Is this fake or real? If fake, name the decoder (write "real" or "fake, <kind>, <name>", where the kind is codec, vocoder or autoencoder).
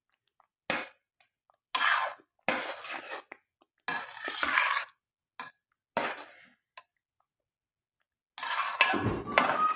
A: real